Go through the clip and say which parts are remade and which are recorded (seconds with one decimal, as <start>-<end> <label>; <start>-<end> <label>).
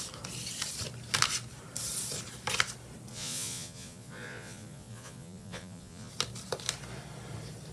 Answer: 0.0-3.1 recorded; 3.1-6.1 remade; 6.1-7.7 recorded